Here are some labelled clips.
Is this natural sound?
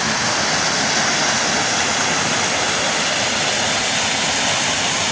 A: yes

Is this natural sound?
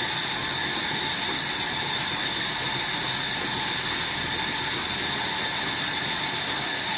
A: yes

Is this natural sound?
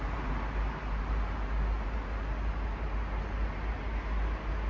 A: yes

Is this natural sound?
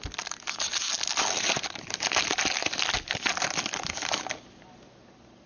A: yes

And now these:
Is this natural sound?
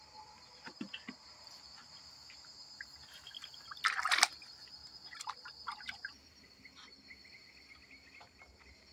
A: yes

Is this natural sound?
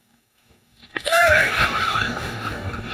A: no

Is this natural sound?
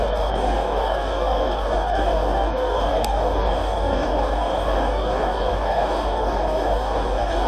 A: no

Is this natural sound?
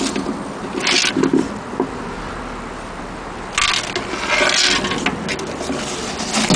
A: yes